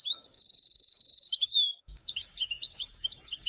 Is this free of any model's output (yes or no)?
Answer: no